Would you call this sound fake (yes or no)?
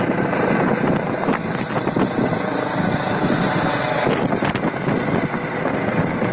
no